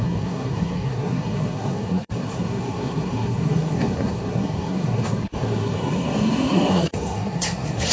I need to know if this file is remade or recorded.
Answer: remade